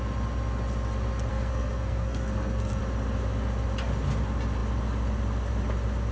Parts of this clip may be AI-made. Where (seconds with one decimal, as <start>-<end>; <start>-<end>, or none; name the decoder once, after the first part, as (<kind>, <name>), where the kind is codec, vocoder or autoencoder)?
1.3-2.8 (codec, SNAC)